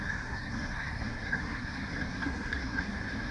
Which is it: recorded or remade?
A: remade